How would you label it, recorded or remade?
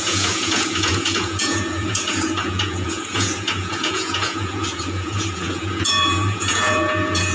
remade